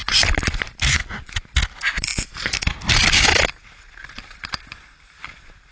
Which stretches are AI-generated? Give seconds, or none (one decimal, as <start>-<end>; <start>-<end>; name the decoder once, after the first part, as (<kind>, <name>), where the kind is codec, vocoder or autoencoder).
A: none